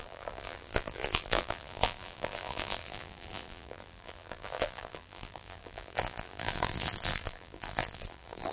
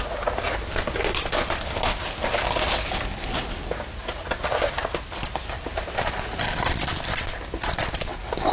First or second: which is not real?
first